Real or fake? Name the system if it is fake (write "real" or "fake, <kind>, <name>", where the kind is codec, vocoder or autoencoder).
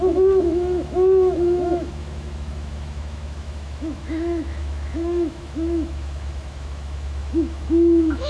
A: fake, autoencoder, DAC-VAE